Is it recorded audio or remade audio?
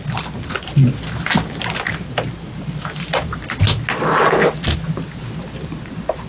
recorded